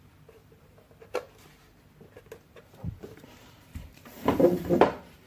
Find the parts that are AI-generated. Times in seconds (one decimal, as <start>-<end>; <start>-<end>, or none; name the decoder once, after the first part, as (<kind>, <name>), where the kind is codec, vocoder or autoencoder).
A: 2.6-5.3 (vocoder, BigVGAN v2)